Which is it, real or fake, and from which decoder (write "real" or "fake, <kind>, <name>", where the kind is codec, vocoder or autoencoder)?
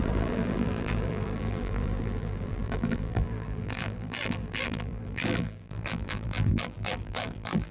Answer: fake, vocoder, BigVGAN v2